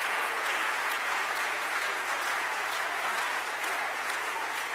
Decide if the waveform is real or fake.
fake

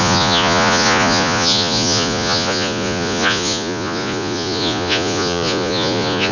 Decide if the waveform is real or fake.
fake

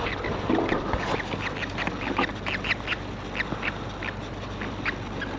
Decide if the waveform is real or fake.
real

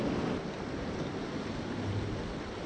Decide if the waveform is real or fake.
real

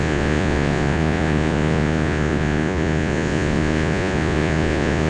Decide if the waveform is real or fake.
fake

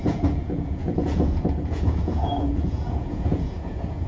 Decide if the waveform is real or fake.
fake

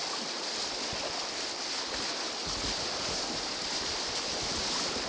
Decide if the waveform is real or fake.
real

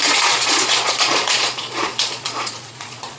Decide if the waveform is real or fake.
fake